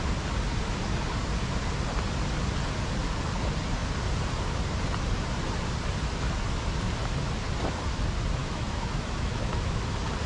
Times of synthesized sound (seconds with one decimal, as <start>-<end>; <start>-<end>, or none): 8.4-9.8